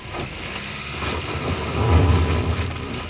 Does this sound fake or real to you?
real